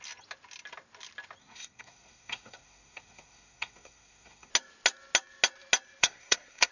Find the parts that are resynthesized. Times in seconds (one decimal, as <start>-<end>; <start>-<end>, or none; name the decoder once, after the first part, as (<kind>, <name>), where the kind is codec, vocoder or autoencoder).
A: 1.4-4.5 (codec, SNAC); 6.0-6.7